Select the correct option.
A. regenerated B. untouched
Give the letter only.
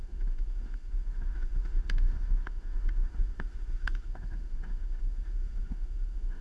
A